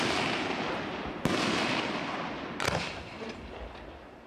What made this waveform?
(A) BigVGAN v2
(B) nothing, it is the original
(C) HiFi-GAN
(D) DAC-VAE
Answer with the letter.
B